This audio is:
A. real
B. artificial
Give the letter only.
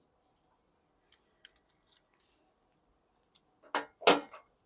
A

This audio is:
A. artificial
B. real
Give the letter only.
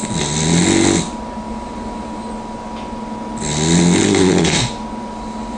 B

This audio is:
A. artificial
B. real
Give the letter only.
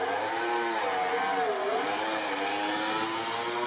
B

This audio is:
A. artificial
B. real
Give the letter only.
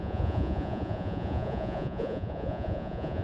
A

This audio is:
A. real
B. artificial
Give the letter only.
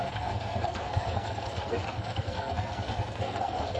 B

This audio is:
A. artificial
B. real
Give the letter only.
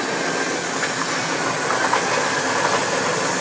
B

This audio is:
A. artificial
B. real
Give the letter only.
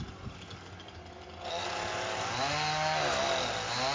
B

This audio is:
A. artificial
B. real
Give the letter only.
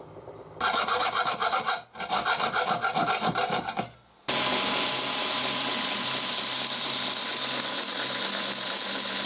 B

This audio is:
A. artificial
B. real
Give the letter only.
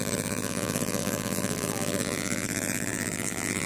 A